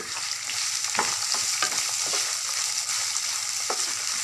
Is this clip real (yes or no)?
yes